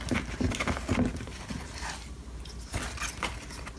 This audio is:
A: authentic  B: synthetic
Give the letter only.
A